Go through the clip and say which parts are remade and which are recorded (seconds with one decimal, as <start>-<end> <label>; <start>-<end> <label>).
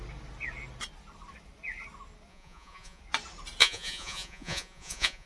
0.0-2.3 recorded; 2.3-3.0 remade; 3.0-3.6 recorded; 3.6-5.3 remade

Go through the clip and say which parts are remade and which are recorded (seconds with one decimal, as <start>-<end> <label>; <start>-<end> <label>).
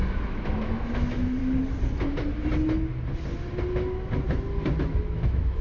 0.0-1.4 remade; 1.4-4.8 recorded; 4.8-5.6 remade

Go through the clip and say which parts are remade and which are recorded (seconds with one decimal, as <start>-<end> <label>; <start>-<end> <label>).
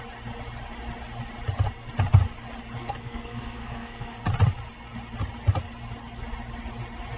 0.0-2.8 recorded; 2.8-4.2 remade; 4.2-7.2 recorded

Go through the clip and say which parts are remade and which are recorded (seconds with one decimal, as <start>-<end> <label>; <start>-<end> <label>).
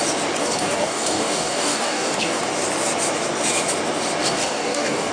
0.0-0.4 recorded; 0.4-2.4 remade; 2.4-4.2 recorded; 4.2-5.1 remade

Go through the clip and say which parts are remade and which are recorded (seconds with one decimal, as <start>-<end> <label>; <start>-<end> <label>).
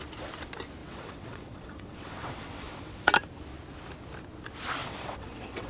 0.0-0.8 recorded; 0.8-3.1 remade; 3.1-4.8 recorded; 4.8-5.7 remade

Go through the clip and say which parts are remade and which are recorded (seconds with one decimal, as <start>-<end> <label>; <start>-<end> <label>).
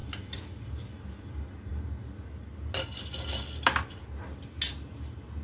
0.0-5.4 recorded